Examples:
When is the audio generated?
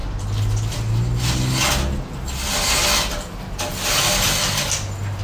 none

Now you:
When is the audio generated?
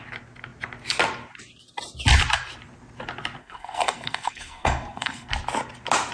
3.4-5.3